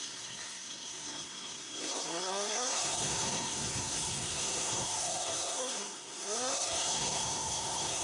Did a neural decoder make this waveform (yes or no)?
yes